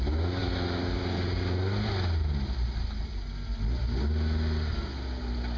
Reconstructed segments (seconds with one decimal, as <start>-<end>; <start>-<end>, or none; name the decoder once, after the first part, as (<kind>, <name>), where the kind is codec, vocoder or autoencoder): none